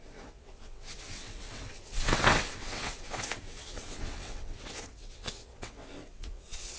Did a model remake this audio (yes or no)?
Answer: yes